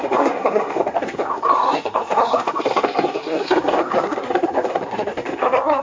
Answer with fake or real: fake